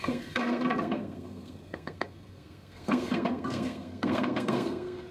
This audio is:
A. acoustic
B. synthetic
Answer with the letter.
B